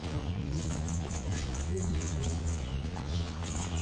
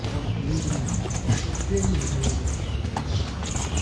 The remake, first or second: first